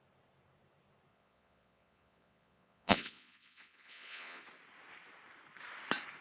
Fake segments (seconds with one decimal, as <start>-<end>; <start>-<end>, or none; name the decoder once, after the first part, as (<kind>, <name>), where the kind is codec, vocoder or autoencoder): 1.1-4.4 (vocoder, Vocos)